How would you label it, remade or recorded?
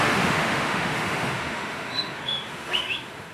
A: remade